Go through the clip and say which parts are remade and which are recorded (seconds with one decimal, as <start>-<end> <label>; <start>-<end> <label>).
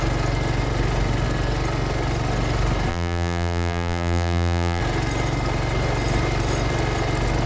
0.0-2.9 recorded; 2.9-4.8 remade; 4.8-7.5 recorded